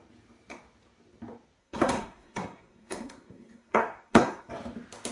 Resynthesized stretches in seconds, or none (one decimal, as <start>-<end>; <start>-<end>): 1.6-4.5